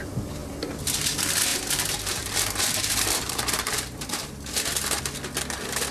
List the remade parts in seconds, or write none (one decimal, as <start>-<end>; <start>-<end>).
1.5-5.0